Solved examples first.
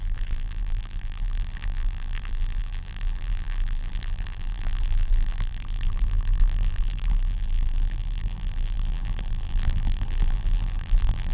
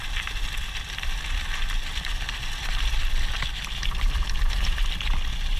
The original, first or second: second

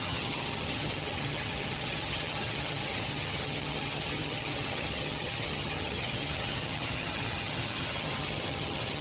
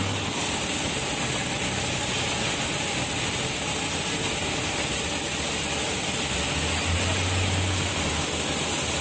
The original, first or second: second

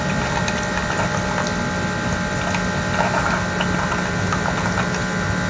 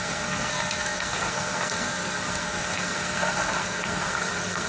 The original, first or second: first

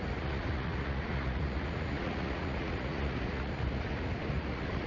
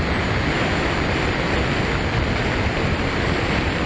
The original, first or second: second